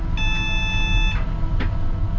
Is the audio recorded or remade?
recorded